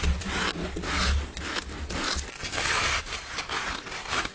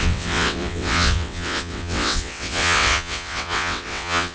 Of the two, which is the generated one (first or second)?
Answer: second